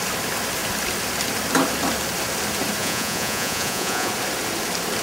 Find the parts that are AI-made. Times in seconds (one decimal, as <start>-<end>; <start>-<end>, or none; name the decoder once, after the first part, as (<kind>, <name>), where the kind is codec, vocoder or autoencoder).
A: 2.8-4.1 (vocoder, Vocos)